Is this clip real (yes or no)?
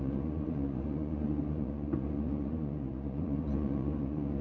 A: no